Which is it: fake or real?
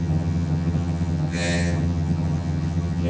fake